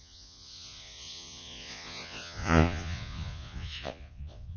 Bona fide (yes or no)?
no